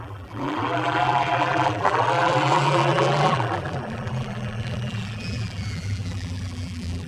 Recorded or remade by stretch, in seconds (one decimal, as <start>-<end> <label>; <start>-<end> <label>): 0.0-7.1 remade